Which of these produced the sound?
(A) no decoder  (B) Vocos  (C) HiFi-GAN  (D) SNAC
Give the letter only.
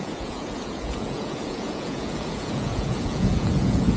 B